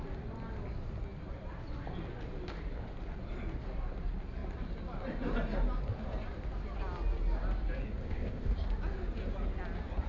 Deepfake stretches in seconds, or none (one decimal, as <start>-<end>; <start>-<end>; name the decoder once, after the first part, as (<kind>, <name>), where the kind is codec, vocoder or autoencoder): 8.0-8.5 (codec, ZipCodec)